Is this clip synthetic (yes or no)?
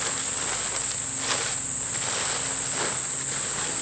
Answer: no